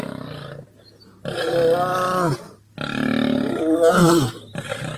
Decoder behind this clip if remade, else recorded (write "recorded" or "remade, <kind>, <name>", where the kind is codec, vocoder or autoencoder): recorded